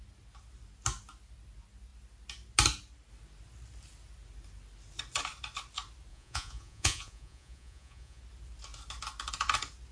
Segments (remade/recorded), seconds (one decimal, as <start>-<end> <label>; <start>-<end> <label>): 0.0-6.1 recorded; 6.1-8.2 remade; 8.2-9.9 recorded